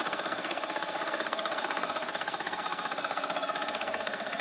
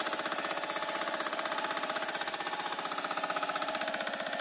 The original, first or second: second